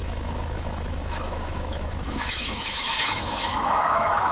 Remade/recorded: remade